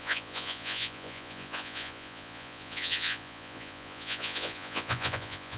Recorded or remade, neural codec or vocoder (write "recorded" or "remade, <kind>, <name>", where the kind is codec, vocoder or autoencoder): remade, vocoder, Vocos